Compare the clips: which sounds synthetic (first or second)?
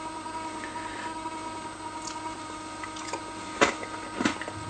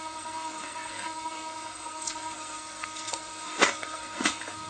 second